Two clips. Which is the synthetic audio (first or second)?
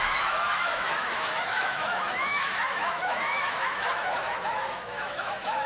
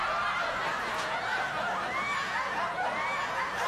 first